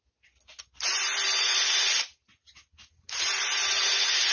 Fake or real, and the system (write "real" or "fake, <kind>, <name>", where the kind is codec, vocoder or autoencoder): real